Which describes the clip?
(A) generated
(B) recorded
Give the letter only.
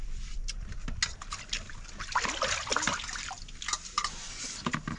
B